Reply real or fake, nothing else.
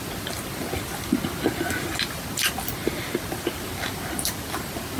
real